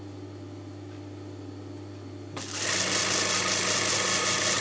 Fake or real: real